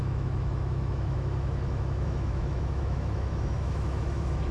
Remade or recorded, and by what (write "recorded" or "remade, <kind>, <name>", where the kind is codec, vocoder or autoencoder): remade, autoencoder, DAC-VAE